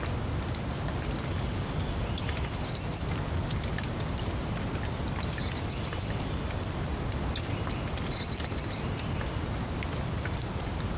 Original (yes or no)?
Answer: yes